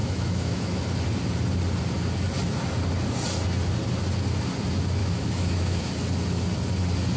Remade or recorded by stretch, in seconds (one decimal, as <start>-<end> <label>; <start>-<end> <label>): 0.0-0.8 remade; 0.8-5.0 recorded; 5.0-5.9 remade; 5.9-7.2 recorded